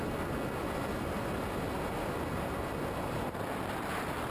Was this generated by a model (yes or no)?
no